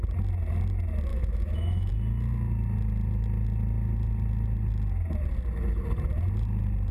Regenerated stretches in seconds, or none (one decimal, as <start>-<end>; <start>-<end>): 1.1-1.9